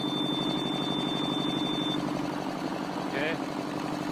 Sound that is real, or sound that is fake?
real